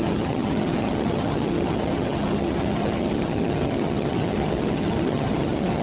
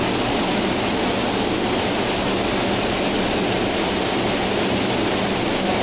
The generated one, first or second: first